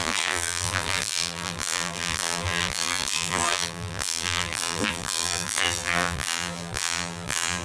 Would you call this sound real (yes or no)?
no